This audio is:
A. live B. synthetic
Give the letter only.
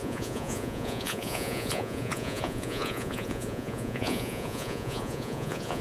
B